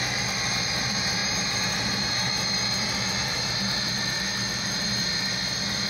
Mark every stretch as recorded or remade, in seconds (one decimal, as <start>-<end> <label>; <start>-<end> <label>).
0.0-1.2 recorded; 1.2-2.3 remade; 2.3-5.9 recorded